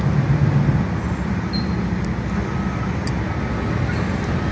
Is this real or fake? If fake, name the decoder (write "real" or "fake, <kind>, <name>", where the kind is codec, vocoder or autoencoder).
real